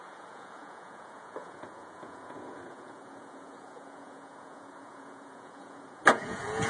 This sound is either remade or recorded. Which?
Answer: remade